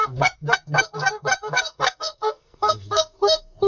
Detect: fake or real fake